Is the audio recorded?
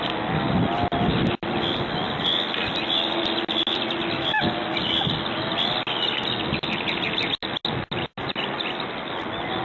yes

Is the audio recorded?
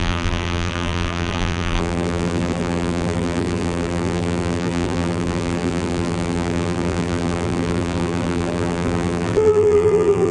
no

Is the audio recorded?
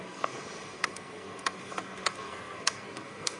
no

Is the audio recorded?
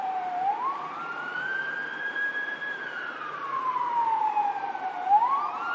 no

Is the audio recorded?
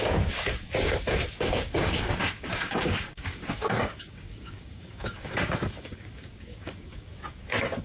no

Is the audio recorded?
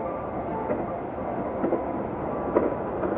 yes